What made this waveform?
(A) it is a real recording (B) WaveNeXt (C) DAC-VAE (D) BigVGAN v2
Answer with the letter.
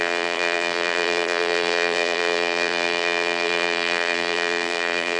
D